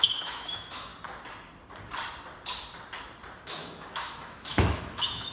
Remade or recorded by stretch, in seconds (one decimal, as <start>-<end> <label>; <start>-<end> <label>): 0.0-0.9 remade; 0.9-3.4 recorded; 3.4-5.3 remade